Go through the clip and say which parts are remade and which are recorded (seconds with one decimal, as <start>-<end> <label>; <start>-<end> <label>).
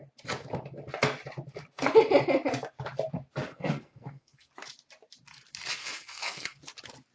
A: 0.0-3.5 recorded; 3.5-4.5 remade; 4.5-5.8 recorded; 5.8-6.6 remade; 6.6-7.1 recorded